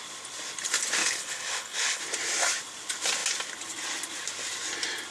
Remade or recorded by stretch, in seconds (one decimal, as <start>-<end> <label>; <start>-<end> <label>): 0.0-1.0 recorded; 1.0-2.0 remade; 2.0-5.1 recorded